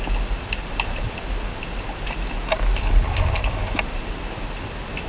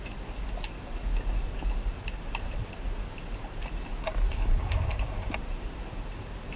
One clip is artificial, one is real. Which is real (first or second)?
first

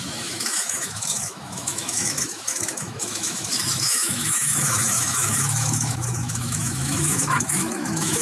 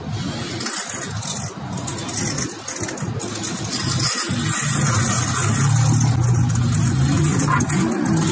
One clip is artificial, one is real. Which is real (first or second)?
second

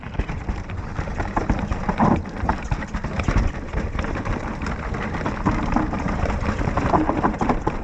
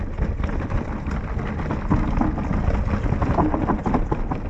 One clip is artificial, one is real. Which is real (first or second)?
second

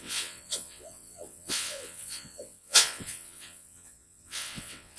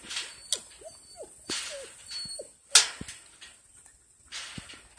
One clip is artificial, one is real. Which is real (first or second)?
second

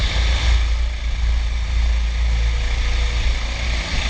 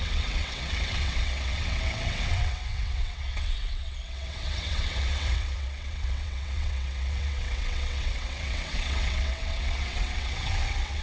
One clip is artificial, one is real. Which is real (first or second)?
first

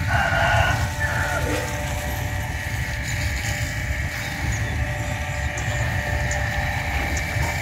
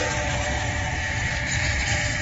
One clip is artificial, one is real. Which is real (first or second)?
first